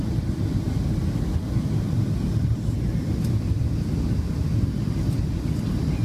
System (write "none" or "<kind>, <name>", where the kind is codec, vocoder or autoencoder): none